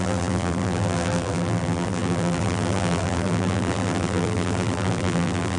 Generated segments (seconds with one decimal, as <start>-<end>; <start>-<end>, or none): 0.0-5.6